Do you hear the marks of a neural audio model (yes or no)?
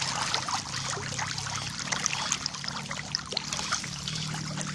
no